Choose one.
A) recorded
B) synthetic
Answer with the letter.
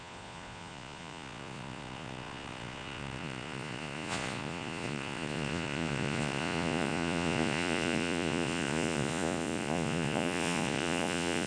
B